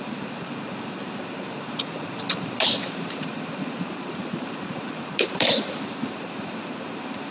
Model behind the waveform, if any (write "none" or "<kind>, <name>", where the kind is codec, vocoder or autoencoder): vocoder, BigVGAN v2